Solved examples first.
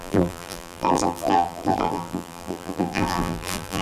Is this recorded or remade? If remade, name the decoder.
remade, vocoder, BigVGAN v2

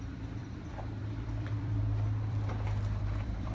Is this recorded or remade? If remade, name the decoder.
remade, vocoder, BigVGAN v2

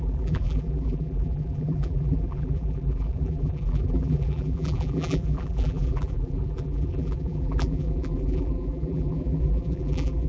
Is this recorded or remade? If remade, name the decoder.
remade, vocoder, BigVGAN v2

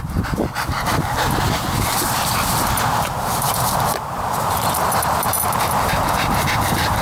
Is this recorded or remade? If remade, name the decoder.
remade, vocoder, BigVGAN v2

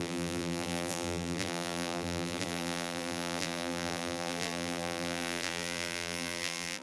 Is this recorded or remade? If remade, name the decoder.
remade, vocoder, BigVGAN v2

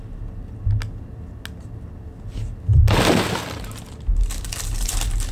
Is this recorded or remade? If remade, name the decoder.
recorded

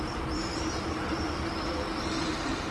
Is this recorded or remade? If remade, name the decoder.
remade, vocoder, BigVGAN v2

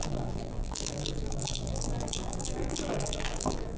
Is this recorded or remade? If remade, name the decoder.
remade, vocoder, BigVGAN v2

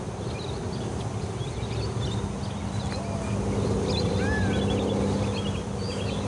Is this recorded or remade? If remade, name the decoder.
recorded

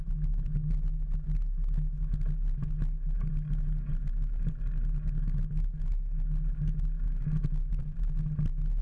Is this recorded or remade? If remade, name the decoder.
recorded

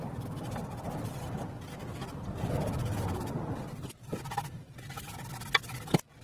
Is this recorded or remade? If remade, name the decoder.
recorded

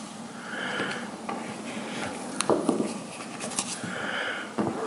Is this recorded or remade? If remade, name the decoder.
recorded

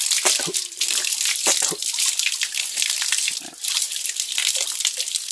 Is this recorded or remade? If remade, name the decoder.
recorded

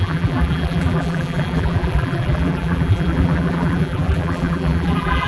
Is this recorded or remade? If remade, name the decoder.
remade, vocoder, BigVGAN v2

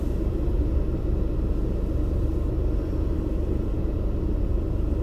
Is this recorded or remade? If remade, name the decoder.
recorded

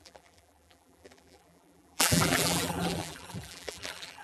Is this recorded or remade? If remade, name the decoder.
remade, vocoder, BigVGAN v2